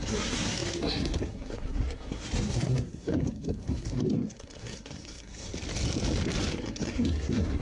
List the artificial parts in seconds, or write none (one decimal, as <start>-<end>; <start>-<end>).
0.0-5.5; 6.5-7.6

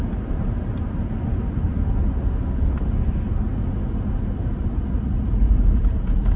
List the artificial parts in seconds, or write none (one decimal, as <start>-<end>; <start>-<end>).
0.0-1.8; 4.6-6.4

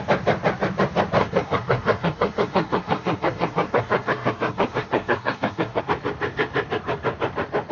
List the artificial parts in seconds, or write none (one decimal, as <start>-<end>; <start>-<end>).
1.2-5.8

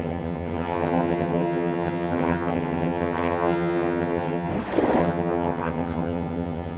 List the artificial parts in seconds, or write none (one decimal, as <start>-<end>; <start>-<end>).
0.0-4.5; 5.0-6.8